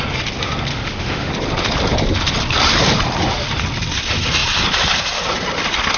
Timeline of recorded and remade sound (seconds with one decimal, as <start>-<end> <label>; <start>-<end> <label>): 0.0-0.7 recorded; 0.7-1.3 remade; 1.3-6.0 recorded